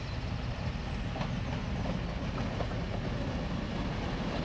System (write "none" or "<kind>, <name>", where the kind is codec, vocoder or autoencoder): none